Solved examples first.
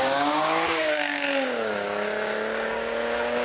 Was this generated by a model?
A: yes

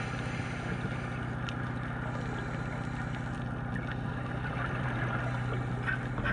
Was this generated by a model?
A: no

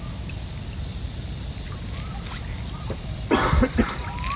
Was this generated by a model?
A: no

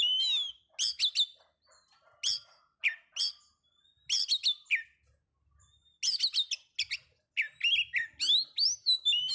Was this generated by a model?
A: no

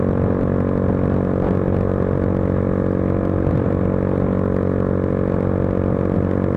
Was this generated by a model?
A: no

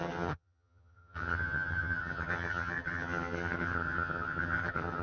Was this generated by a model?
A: yes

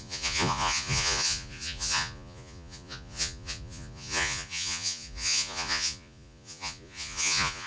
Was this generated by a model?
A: yes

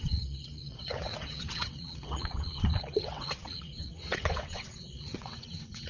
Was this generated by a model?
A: yes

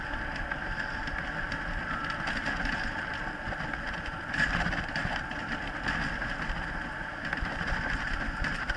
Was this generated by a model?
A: no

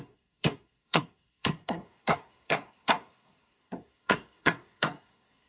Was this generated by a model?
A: yes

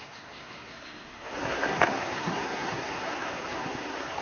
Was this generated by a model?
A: yes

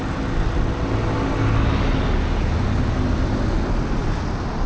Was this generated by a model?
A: no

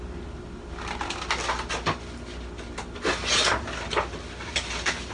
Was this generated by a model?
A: no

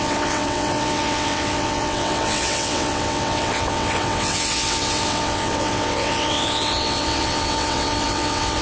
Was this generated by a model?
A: yes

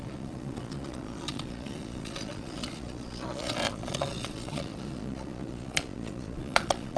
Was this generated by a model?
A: yes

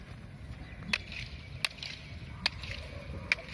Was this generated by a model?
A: no